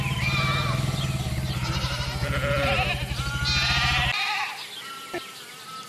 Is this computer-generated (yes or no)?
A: no